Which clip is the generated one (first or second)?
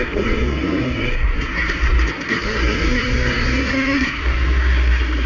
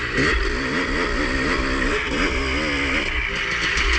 first